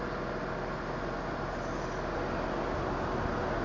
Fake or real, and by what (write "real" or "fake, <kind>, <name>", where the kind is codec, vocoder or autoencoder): real